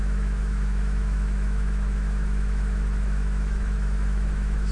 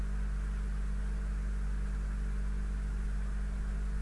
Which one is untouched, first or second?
second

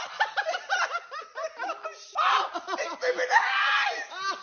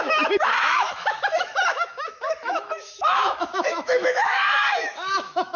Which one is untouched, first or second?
first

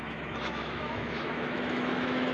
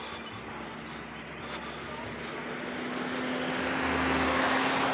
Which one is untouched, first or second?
second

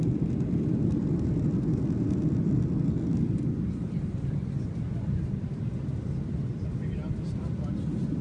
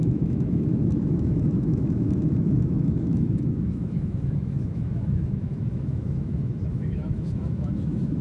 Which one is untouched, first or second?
first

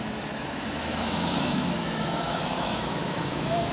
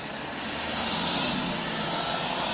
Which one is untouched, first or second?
second